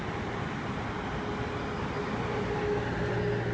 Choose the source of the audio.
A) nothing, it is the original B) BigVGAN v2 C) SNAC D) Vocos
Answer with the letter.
A